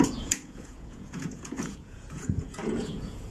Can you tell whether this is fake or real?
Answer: fake